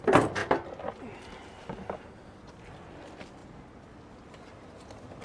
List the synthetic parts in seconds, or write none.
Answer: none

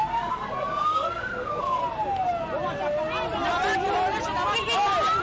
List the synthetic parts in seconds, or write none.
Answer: 0.0-1.8 (codec, SNAC)

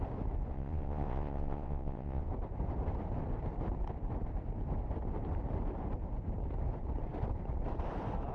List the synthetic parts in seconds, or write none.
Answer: 0.5-2.3 (vocoder, Vocos)

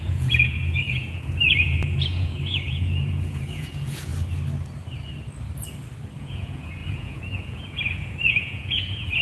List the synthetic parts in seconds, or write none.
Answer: 0.0-4.1 (vocoder, Vocos); 6.2-9.2

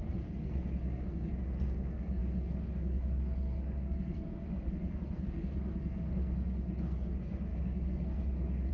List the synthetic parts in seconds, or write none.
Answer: 0.0-8.7 (codec, SNAC)

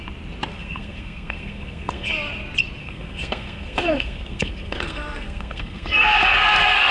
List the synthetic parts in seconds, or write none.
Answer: 0.5-2.1 (codec, SNAC); 2.8-6.9